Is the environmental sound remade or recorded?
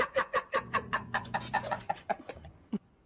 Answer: remade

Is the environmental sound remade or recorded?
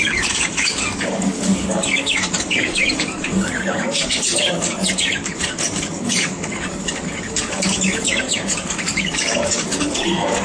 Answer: remade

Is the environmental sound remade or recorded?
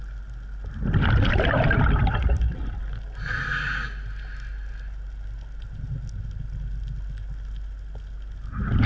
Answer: recorded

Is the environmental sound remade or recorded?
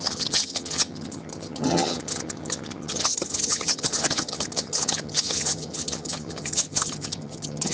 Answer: remade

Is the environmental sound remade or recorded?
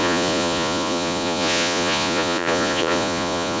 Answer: remade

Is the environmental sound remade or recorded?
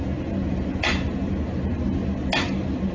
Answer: recorded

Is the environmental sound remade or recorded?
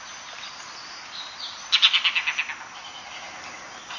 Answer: recorded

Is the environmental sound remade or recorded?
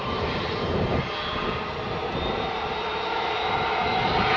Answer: recorded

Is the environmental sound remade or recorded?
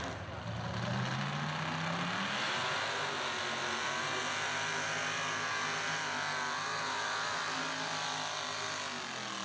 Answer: recorded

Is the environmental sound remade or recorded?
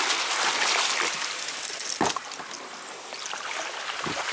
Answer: recorded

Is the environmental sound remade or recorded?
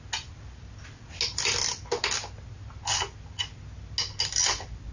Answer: recorded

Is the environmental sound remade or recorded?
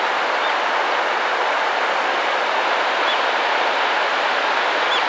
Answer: recorded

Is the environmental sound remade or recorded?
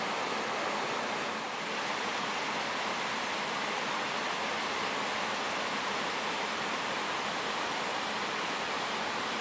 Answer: recorded